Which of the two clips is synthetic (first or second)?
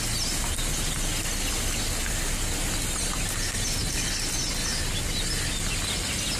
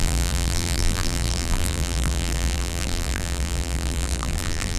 second